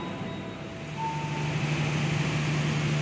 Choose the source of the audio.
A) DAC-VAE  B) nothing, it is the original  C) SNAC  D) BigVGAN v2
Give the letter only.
B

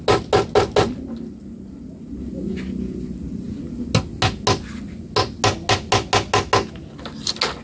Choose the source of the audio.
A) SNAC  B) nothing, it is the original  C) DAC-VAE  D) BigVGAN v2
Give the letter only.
B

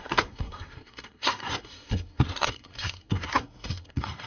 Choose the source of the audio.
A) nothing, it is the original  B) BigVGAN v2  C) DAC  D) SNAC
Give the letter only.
D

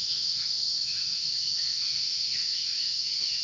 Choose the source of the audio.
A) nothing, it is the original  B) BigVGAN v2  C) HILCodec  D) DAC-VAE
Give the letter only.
D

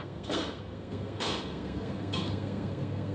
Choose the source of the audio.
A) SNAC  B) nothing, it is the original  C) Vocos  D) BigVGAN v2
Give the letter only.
A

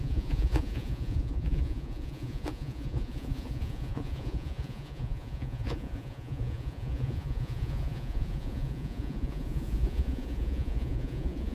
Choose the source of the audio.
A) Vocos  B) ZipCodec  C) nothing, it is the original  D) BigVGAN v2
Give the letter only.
A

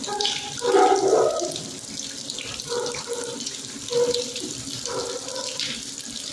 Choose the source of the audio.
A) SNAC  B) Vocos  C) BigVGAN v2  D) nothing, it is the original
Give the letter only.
D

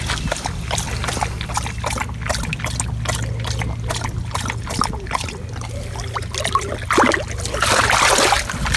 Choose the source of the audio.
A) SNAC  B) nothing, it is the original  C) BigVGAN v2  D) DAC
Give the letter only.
B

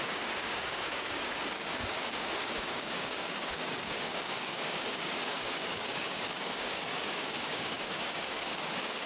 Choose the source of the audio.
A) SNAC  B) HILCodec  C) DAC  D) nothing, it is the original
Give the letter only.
C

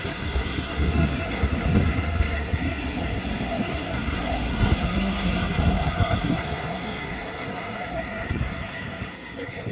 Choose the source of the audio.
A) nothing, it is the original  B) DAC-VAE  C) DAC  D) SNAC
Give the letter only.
D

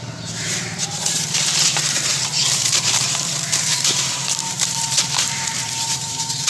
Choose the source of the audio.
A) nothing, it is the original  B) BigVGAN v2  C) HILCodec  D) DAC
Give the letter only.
B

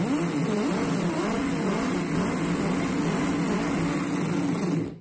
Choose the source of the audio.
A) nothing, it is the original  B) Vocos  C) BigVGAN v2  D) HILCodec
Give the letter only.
A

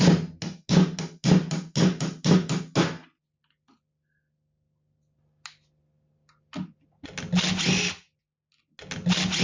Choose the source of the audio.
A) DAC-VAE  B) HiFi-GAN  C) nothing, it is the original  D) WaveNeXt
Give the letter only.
C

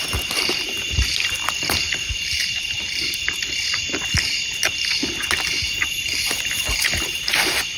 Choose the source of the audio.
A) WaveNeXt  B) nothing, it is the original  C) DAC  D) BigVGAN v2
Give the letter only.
B